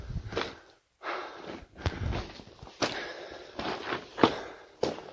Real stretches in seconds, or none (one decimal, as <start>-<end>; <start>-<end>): 0.0-5.1